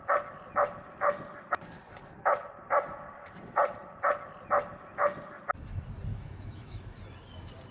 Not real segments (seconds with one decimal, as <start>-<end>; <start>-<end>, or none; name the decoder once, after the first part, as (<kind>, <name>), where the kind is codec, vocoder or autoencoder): 6.1-7.0 (autoencoder, DAC-VAE)